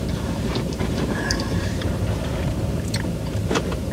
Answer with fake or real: fake